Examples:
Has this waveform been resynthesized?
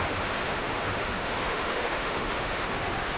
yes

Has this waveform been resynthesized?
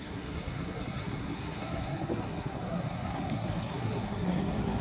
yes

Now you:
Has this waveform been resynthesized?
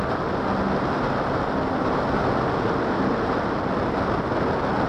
no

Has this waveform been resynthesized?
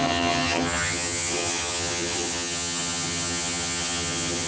yes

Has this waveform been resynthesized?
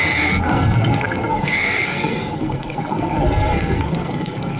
yes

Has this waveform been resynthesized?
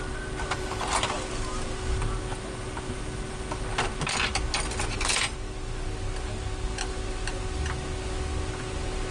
no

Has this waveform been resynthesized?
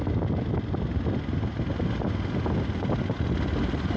no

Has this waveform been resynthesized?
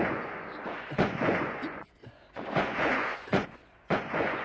yes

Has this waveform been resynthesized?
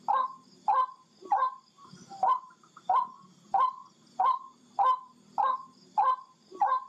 no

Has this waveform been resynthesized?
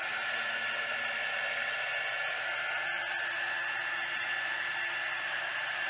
no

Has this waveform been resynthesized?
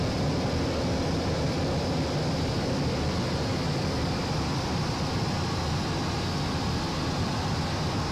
no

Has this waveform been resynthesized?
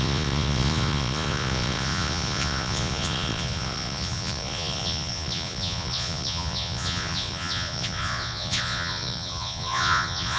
yes